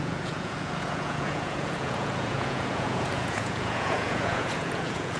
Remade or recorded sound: remade